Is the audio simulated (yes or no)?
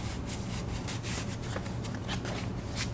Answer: no